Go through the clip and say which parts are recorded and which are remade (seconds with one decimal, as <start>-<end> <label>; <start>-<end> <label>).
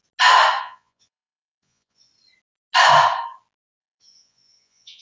0.0-0.6 recorded; 0.6-2.1 remade; 2.1-3.8 recorded; 3.8-5.0 remade